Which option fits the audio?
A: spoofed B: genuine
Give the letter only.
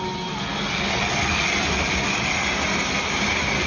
B